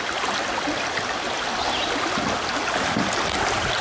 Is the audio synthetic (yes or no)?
no